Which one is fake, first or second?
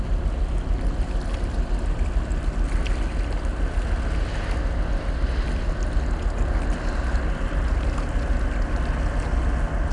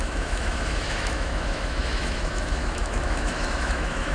second